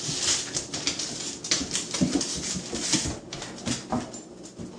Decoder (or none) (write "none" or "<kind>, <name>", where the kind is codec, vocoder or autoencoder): none